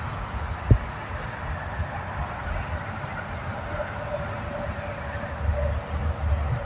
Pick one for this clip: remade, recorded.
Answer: recorded